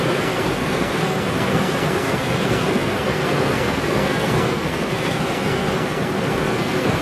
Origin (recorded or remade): remade